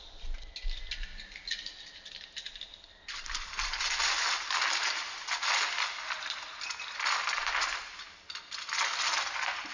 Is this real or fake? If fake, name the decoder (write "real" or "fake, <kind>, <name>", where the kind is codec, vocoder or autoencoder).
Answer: real